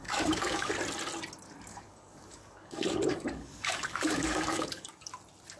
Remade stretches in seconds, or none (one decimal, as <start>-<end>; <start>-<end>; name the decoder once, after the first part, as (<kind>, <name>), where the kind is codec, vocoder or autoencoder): 0.0-0.7 (codec, DAC); 1.7-5.1